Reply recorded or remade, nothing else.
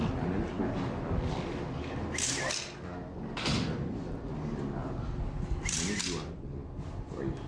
recorded